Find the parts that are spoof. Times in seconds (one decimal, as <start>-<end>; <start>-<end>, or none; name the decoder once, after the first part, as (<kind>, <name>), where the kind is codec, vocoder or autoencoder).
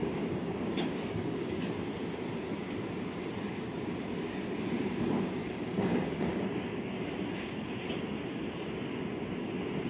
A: 0.0-1.6 (codec, DAC); 5.4-6.9